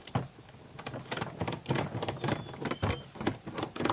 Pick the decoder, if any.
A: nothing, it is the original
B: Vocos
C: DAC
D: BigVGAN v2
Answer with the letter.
A